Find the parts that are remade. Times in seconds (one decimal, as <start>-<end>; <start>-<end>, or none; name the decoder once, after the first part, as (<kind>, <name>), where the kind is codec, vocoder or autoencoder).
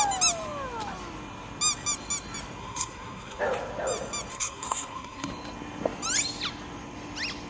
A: 2.6-3.4 (codec, SNAC); 4.3-5.3